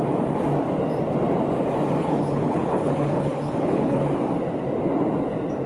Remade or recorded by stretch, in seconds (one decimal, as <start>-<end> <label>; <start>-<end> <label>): 0.0-2.0 recorded; 2.0-4.0 remade; 4.0-5.7 recorded